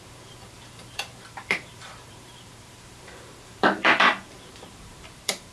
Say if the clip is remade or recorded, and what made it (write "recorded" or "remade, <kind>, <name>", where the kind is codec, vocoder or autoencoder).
remade, vocoder, BigVGAN v2